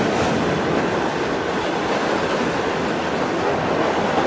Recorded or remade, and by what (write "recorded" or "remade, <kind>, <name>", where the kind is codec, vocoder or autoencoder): recorded